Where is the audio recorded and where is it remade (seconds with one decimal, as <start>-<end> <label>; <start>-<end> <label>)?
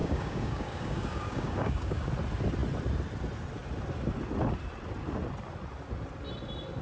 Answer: 0.0-2.1 remade; 2.1-6.8 recorded